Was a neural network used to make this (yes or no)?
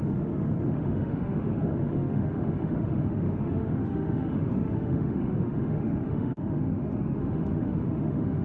yes